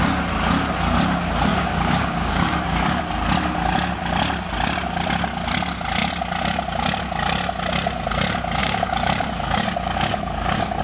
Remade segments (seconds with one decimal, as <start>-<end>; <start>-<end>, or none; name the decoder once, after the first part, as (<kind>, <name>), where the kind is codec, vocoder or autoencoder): 1.5-3.0 (codec, DAC); 8.6-10.8